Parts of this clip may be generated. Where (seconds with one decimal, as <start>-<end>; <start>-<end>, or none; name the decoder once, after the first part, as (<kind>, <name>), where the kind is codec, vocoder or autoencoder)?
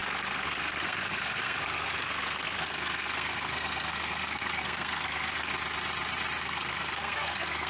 0.0-5.5 (codec, SNAC); 6.4-7.7